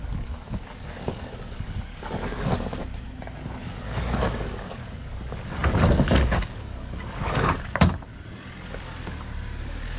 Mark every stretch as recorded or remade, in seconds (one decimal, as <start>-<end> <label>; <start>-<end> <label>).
0.0-2.8 remade; 2.8-3.8 recorded; 3.8-8.1 remade; 8.1-8.7 recorded; 8.7-10.0 remade